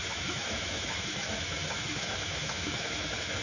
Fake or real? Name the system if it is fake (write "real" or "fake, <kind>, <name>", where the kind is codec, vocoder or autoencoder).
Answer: fake, autoencoder, DAC-VAE